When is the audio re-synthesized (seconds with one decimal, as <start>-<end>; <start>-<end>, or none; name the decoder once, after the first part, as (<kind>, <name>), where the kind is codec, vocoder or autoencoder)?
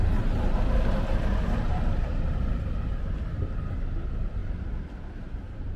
1.7-2.6 (vocoder, BigVGAN v2); 4.4-5.1